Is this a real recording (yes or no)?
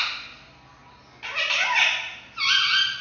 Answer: yes